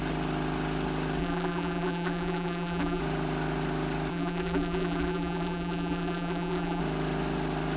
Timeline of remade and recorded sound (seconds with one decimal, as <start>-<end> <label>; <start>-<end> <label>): 0.0-1.2 recorded; 1.2-3.0 remade; 3.0-4.1 recorded; 4.1-6.8 remade; 6.8-7.8 recorded